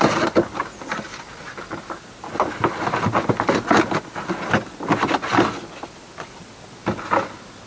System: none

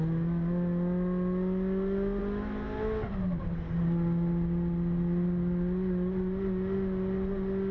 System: none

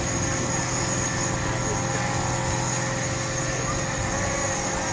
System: none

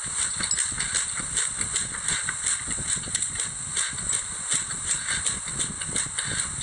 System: none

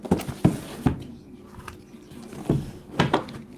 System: none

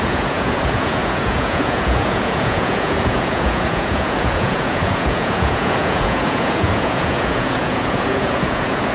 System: vocoder, Vocos